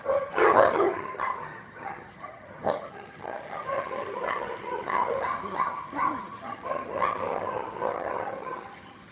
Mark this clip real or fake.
fake